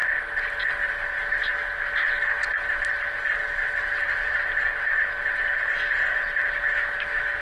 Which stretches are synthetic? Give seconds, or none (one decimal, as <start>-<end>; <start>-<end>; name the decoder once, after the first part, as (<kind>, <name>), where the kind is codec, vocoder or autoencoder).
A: 6.7-7.4 (autoencoder, DAC-VAE)